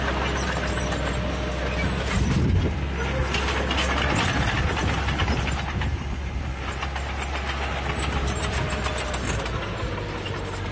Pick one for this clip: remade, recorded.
recorded